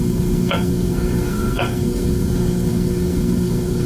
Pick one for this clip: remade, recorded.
remade